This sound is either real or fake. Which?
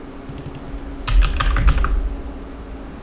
real